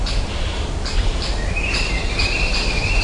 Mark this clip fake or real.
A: fake